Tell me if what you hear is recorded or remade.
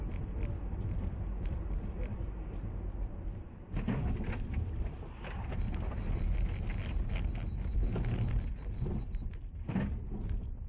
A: recorded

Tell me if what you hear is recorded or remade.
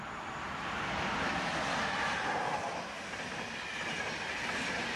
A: recorded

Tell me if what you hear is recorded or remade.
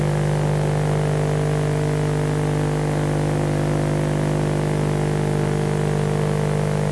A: recorded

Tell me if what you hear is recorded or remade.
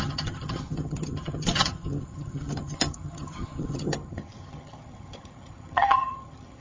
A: remade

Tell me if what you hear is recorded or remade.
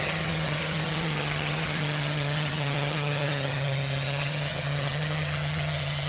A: remade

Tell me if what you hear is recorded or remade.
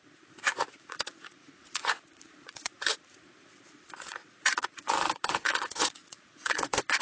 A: remade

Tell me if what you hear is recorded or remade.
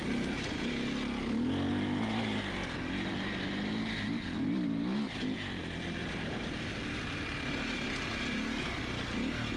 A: recorded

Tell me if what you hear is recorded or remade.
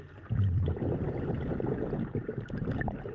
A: recorded